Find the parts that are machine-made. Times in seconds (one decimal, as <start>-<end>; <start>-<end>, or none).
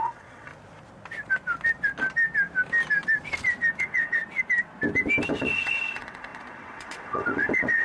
0.0-0.5; 3.8-4.2; 5.3-7.8